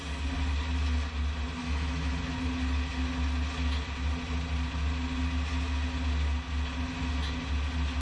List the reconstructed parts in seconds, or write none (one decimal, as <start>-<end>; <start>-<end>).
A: 1.6-2.2